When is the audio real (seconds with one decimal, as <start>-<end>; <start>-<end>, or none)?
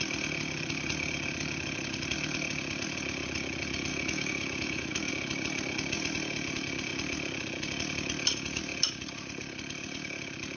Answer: 0.0-3.9; 5.1-10.6